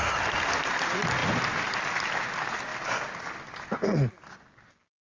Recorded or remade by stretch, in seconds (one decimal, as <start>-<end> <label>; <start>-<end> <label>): 0.0-5.0 recorded